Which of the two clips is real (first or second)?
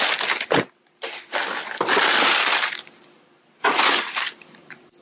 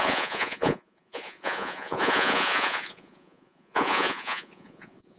first